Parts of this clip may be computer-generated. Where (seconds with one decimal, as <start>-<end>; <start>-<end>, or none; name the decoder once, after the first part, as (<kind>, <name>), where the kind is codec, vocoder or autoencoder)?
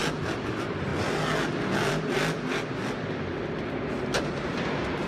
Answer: none